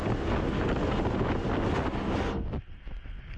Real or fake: real